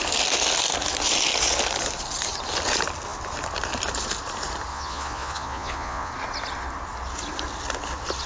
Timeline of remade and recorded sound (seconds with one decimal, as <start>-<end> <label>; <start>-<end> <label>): 0.0-4.7 recorded; 4.7-6.1 remade; 6.1-8.3 recorded